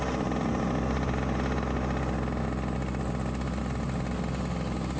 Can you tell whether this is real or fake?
real